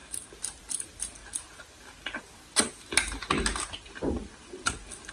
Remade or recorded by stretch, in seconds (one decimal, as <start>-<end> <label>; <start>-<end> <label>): 0.0-5.1 recorded